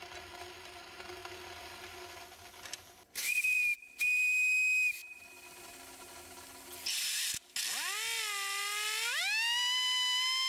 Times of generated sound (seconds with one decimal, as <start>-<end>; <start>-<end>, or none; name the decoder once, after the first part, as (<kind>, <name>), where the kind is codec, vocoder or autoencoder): none